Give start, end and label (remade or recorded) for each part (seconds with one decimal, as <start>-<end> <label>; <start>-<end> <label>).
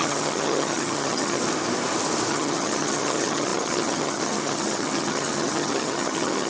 0.0-1.4 remade; 1.4-2.3 recorded; 2.3-6.5 remade